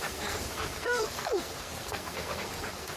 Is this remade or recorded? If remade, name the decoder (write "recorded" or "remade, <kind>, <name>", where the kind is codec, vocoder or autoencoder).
remade, codec, SNAC